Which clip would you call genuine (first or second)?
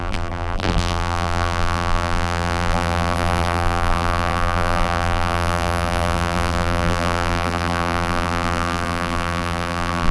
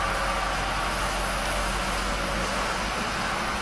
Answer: second